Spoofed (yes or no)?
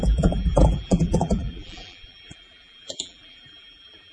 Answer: yes